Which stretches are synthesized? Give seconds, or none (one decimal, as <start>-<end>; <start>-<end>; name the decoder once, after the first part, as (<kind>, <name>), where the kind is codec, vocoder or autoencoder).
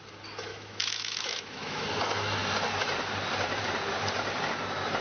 0.5-1.8 (autoencoder, DAC-VAE)